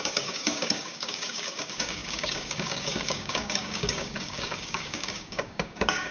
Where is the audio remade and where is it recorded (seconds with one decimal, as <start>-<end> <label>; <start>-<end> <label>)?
0.0-6.1 remade